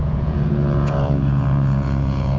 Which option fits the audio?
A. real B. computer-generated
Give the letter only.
B